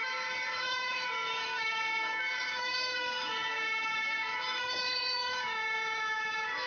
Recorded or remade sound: remade